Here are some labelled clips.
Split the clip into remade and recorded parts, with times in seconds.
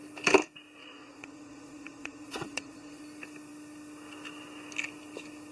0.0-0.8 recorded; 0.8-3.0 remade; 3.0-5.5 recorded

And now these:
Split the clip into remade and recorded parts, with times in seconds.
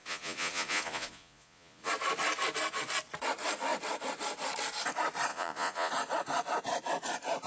0.0-1.9 remade; 1.9-5.3 recorded; 5.3-5.9 remade; 5.9-7.5 recorded